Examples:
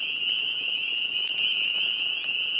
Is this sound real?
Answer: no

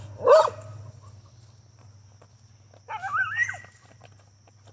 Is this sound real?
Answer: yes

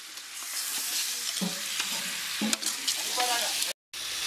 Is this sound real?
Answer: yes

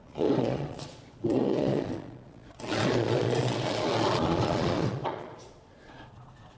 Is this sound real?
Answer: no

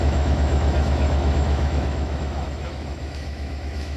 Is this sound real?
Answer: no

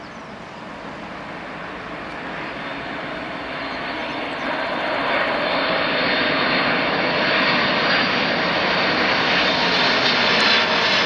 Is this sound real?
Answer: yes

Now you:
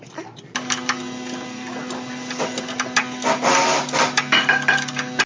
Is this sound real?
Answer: yes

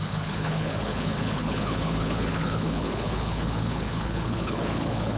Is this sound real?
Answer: no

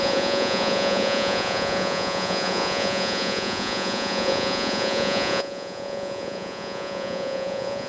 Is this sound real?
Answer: no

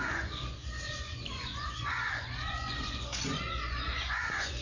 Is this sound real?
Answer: no